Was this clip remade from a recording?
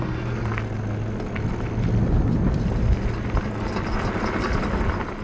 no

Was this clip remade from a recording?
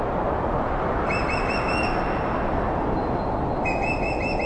no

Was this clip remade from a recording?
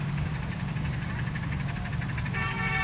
yes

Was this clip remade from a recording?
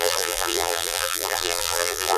yes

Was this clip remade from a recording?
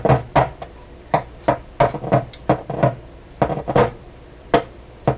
no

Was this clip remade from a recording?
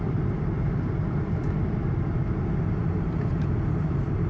yes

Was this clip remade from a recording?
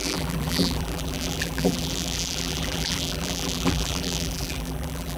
yes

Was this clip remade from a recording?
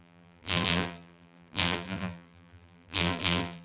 yes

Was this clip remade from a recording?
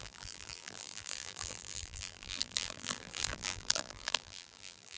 yes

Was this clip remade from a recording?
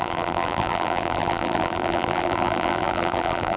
yes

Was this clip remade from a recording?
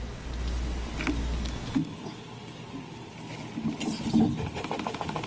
no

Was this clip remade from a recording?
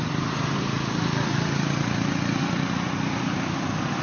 no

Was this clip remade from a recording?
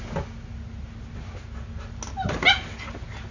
no